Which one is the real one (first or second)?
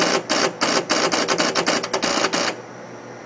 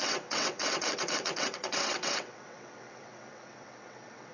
first